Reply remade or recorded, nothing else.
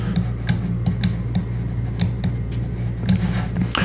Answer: recorded